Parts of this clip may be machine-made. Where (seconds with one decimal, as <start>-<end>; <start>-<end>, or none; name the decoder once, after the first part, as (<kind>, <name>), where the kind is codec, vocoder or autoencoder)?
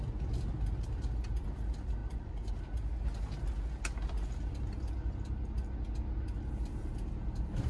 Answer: 2.0-2.5 (vocoder, Vocos)